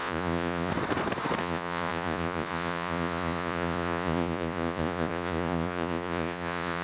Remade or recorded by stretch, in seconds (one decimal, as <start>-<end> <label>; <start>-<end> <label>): 0.0-0.7 remade; 0.7-1.4 recorded; 1.4-6.8 remade